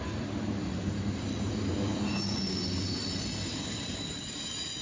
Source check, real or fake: real